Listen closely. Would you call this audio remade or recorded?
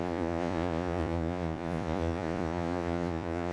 remade